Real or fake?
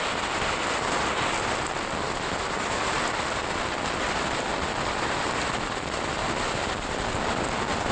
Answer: real